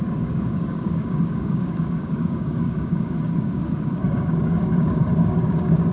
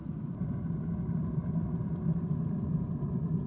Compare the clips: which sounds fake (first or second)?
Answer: first